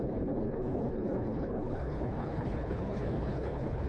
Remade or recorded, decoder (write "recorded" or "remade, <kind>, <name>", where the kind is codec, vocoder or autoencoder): remade, codec, HILCodec